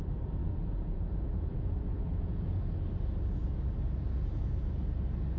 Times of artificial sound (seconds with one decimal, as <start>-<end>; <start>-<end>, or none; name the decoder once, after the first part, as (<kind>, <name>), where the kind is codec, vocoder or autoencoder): 0.4-2.7 (vocoder, Vocos)